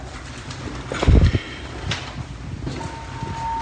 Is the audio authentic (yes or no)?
yes